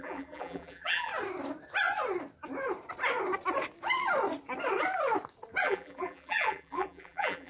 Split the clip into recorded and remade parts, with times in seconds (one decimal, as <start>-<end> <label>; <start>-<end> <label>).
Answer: 0.0-1.1 remade; 1.1-5.6 recorded; 5.6-7.5 remade